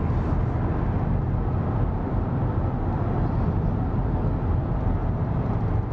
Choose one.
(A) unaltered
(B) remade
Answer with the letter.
A